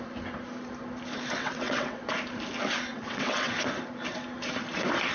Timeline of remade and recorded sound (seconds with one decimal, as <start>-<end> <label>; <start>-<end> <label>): 0.0-1.4 recorded; 1.4-2.0 remade; 2.0-2.9 recorded; 2.9-3.5 remade; 3.5-5.1 recorded